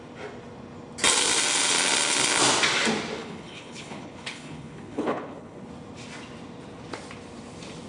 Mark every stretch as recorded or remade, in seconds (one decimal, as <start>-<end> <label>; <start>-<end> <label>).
0.0-3.2 recorded; 3.2-5.7 remade; 5.7-7.9 recorded